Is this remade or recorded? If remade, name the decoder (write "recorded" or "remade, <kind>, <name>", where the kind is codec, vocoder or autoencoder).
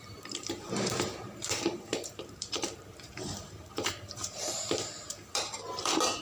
remade, vocoder, BigVGAN v2